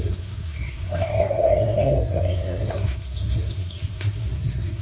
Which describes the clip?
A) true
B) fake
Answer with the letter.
B